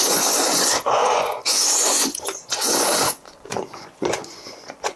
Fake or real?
fake